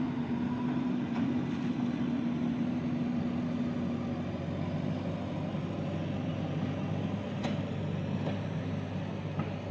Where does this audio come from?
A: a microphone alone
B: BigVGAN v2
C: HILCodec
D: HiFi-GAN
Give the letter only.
A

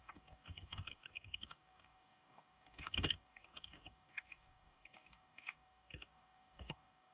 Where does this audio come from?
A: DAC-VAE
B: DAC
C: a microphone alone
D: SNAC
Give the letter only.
B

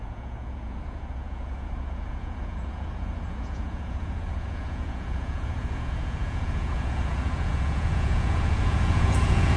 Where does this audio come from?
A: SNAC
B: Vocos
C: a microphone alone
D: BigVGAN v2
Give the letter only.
B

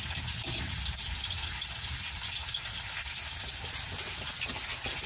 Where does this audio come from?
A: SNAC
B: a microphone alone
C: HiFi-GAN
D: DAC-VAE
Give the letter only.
B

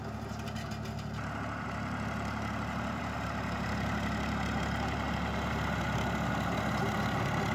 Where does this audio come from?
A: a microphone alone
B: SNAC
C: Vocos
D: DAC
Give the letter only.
A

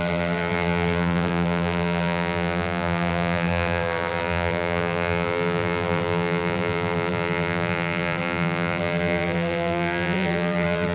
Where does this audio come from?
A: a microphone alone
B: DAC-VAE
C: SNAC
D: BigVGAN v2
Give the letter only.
D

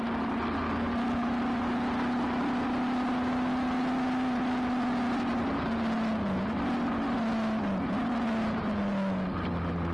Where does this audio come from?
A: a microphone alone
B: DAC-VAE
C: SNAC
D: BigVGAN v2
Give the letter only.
A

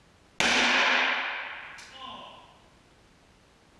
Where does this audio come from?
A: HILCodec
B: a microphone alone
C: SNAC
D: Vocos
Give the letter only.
B